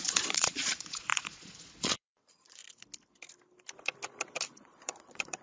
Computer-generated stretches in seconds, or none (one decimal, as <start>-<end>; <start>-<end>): 0.0-2.6; 4.6-5.4